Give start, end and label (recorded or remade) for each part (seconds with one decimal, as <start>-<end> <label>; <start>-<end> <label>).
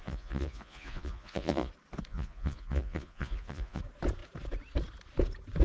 0.0-1.7 remade; 1.7-2.1 recorded; 2.1-3.8 remade; 3.8-5.6 recorded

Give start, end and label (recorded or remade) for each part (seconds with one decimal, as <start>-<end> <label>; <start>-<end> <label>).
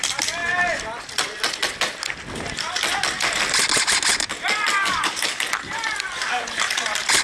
0.0-4.8 recorded; 4.8-5.4 remade; 5.4-7.2 recorded